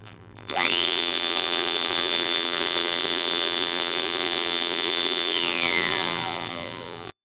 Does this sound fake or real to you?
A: fake